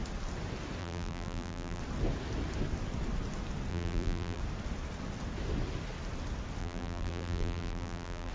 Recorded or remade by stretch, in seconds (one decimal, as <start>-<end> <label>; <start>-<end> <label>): 0.0-0.8 recorded; 0.8-1.8 remade; 1.8-3.7 recorded; 3.7-4.4 remade; 4.4-6.6 recorded; 6.6-8.3 remade